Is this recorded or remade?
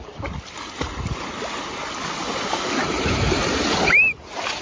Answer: recorded